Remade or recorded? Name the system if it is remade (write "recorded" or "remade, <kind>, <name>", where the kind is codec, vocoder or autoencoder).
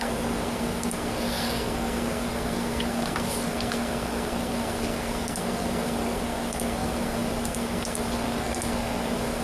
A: remade, codec, SNAC